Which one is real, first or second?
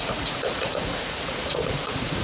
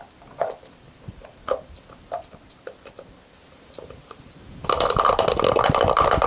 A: second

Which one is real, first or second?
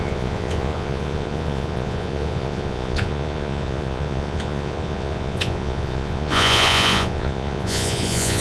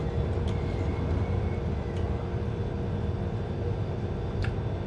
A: second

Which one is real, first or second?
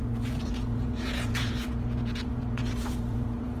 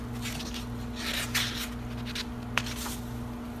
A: second